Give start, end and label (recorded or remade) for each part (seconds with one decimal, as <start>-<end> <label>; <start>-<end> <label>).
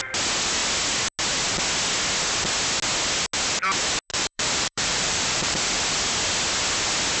0.0-4.1 recorded; 4.1-5.8 remade; 5.8-7.2 recorded